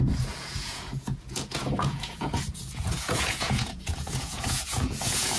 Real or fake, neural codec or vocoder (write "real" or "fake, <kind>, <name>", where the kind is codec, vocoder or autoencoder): fake, vocoder, Vocos